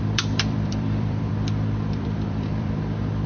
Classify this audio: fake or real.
fake